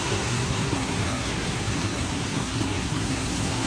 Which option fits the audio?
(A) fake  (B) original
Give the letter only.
A